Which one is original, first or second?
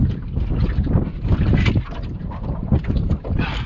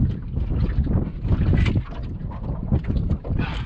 second